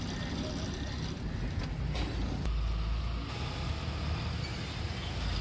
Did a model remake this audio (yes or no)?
no